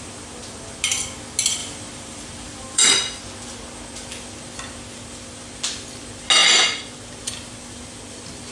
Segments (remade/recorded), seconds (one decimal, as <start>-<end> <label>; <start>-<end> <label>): 0.0-1.6 recorded; 1.6-2.9 remade; 2.9-8.5 recorded